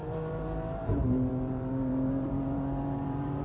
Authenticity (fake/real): fake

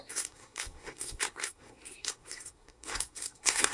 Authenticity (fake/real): fake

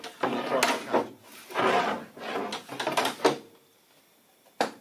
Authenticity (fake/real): real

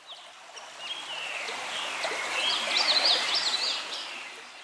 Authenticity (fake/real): real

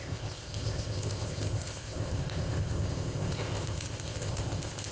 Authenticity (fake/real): fake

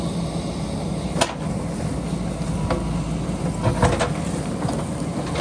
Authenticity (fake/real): real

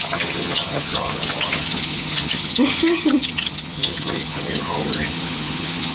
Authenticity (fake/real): fake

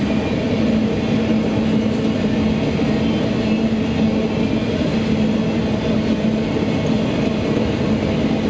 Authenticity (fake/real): real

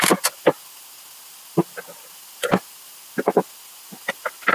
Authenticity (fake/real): real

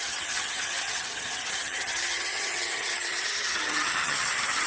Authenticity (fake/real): fake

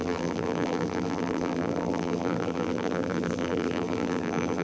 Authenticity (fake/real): fake